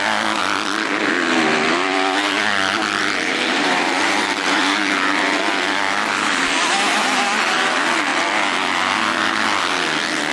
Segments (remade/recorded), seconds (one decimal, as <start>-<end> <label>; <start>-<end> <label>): 0.0-3.0 recorded; 3.0-4.6 remade; 4.6-10.3 recorded